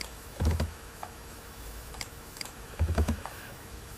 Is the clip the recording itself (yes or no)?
no